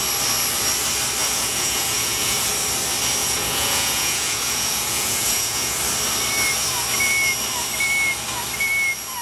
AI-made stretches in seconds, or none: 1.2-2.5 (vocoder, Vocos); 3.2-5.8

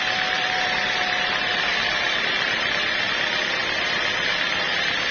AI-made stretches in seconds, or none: 0.0-5.1 (vocoder, BigVGAN v2)

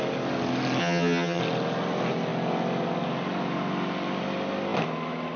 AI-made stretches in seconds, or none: 0.8-1.4 (vocoder, HiFi-GAN)